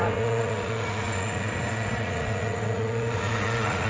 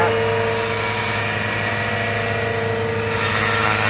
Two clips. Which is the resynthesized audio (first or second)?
first